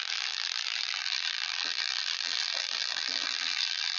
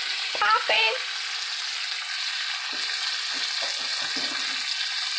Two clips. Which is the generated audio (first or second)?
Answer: first